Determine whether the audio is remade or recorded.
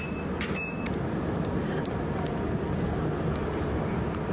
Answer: recorded